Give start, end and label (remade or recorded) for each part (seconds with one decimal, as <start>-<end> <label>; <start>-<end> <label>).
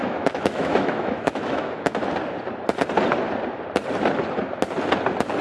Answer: 0.0-2.0 remade; 2.0-5.4 recorded